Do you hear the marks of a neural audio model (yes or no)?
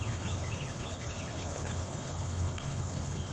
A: yes